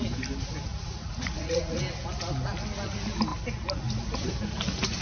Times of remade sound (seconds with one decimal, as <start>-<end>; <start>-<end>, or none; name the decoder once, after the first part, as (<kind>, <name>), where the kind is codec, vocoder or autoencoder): 0.7-1.8 (vocoder, Vocos)